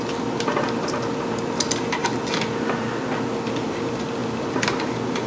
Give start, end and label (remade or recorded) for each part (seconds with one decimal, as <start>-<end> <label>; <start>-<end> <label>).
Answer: 0.0-5.3 recorded

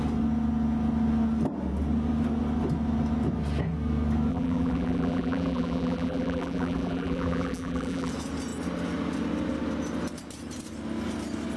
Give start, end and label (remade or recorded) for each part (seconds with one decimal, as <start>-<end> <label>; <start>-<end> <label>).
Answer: 0.0-4.3 recorded; 4.3-8.1 remade; 8.1-11.6 recorded

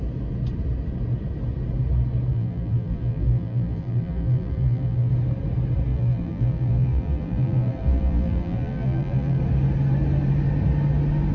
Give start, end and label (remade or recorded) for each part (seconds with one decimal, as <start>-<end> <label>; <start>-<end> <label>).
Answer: 0.0-2.3 recorded; 2.3-5.1 remade; 5.1-5.9 recorded; 5.9-9.4 remade; 9.4-11.3 recorded

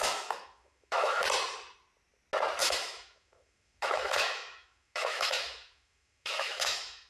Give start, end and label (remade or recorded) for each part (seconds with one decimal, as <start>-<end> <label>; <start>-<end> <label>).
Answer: 0.0-1.2 remade; 1.2-2.6 recorded; 2.6-7.1 remade

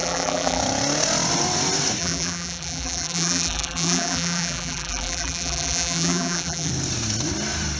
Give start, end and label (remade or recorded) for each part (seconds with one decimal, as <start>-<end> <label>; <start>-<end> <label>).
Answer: 0.0-0.6 remade; 0.6-2.0 recorded; 2.0-6.7 remade; 6.7-7.8 recorded

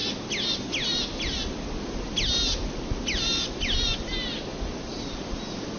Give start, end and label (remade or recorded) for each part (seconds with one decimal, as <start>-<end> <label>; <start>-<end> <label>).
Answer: 0.0-5.8 recorded

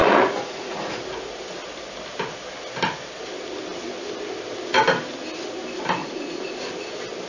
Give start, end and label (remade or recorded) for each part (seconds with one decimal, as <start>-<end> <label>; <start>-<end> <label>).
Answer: 0.0-1.0 remade; 1.0-6.0 recorded; 6.0-6.7 remade; 6.7-7.3 recorded

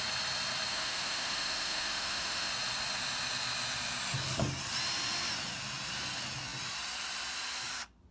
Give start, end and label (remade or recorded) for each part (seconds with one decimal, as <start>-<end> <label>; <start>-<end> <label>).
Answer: 0.0-0.7 recorded; 0.7-2.5 remade; 2.5-8.1 recorded